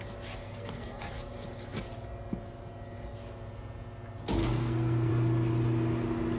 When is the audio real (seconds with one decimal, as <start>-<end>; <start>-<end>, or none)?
0.0-0.4; 1.1-4.4; 5.1-6.4